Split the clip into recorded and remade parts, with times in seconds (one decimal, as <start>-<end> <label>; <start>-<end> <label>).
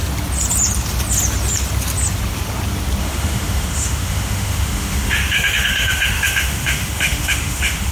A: 0.0-3.0 recorded; 3.0-7.9 remade